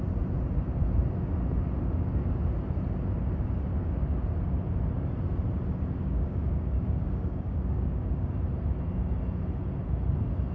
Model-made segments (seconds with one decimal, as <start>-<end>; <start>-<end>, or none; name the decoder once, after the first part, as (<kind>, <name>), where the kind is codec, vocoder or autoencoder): 6.0-8.3 (codec, DAC)